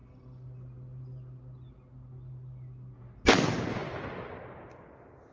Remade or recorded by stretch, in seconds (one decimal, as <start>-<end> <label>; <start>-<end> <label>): 0.0-5.3 recorded